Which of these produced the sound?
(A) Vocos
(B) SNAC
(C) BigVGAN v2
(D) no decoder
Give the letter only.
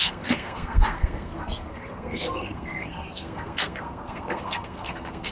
B